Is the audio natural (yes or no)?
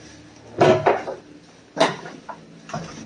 yes